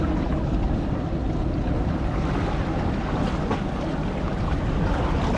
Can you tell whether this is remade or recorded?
recorded